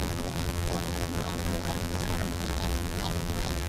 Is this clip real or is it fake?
fake